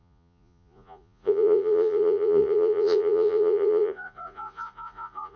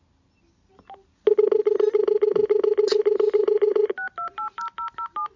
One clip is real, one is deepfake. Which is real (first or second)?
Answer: second